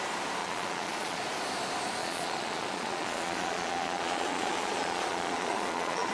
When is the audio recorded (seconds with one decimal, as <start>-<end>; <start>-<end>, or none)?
0.0-0.4; 1.2-2.0

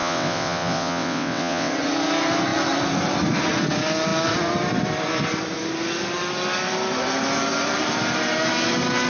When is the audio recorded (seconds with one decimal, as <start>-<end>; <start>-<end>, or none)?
1.7-9.1

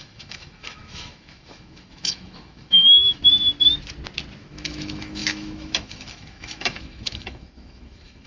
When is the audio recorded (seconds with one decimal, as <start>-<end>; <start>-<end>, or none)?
3.2-4.4